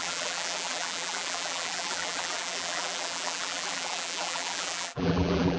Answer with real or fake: fake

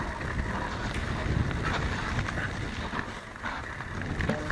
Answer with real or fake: real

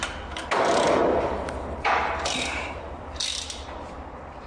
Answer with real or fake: fake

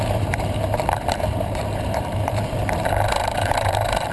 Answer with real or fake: fake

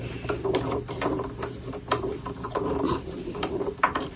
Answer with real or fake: fake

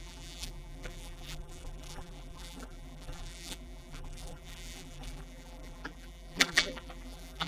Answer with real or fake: fake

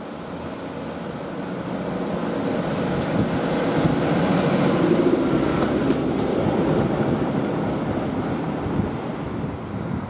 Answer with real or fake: real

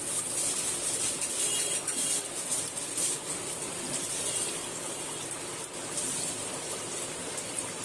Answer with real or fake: real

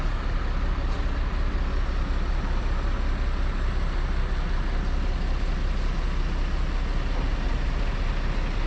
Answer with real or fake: real